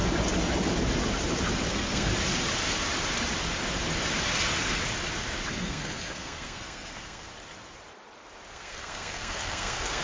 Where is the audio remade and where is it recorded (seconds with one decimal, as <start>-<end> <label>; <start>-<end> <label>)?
0.0-1.7 recorded; 1.7-2.1 remade; 2.1-5.5 recorded; 5.5-7.3 remade; 7.3-8.5 recorded; 8.5-10.0 remade